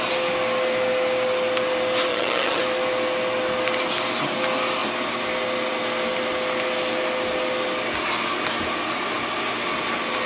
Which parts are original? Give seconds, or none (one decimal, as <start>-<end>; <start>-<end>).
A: 0.0-2.1; 2.6-10.3